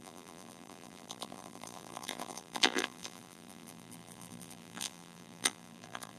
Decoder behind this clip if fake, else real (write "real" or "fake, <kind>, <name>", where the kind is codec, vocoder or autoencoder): fake, vocoder, BigVGAN v2